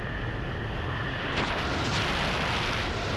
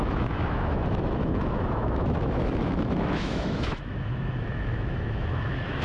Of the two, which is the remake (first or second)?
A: second